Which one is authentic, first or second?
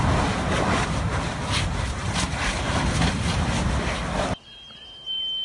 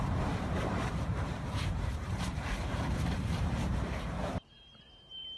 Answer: first